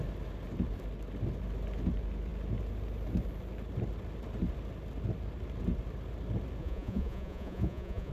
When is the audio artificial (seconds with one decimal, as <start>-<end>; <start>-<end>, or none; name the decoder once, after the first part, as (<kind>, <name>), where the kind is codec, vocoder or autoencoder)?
6.6-8.1 (vocoder, Vocos)